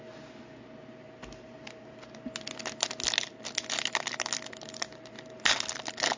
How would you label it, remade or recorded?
recorded